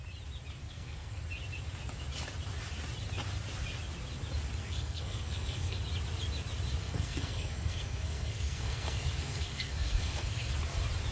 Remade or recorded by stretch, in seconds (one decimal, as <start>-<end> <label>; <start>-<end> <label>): 0.0-0.6 recorded; 0.6-1.2 remade; 1.2-4.6 recorded; 4.6-5.8 remade; 5.8-6.8 recorded; 6.8-10.5 remade; 10.5-11.1 recorded